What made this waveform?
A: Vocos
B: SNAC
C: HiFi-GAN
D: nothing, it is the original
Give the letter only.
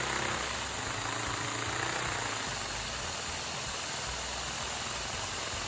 D